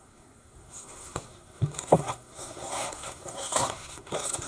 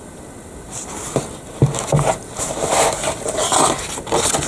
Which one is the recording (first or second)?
second